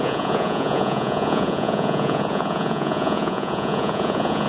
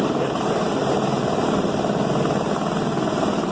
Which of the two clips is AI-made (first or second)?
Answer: first